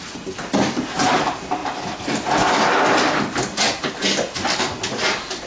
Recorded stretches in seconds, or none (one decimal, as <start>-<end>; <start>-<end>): 0.0-5.5